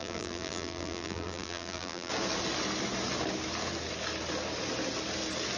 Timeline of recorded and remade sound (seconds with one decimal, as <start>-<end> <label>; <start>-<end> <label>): 0.0-2.1 remade; 2.1-5.6 recorded